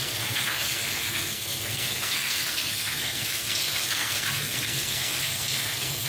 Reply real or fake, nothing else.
fake